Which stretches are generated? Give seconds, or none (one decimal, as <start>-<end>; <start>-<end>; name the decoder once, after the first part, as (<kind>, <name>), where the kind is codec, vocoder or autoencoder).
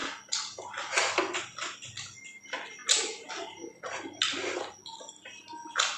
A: none